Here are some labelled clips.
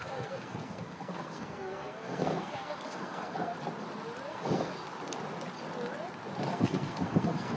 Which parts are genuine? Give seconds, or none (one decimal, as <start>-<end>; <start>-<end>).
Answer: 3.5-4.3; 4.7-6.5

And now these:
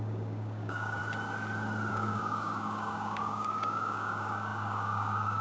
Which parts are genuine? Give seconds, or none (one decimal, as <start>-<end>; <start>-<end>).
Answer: 1.0-1.9

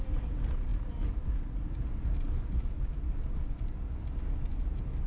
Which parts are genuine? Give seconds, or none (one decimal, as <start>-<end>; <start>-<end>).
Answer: 0.0-5.1

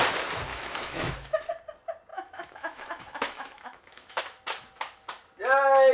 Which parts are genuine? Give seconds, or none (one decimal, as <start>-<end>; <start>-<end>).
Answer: 0.0-0.5; 1.5-2.1; 4.2-5.9

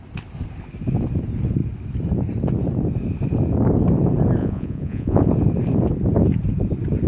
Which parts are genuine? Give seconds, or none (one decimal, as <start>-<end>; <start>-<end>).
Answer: 0.0-4.4; 5.3-7.1

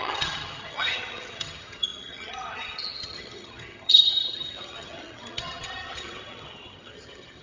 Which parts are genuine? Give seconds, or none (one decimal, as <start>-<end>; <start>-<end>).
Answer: none

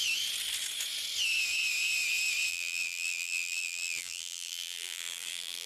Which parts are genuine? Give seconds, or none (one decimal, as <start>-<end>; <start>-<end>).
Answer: 0.0-2.5